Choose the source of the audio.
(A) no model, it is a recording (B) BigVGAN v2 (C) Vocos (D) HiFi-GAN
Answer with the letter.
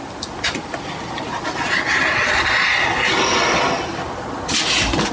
A